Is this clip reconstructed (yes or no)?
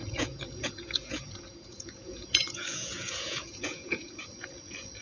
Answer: yes